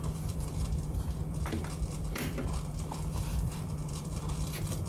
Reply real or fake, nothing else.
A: fake